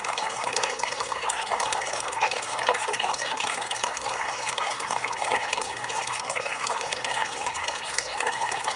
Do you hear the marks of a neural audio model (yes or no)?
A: yes